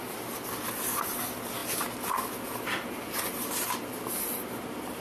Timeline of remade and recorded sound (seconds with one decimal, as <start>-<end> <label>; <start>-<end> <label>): 0.0-5.0 recorded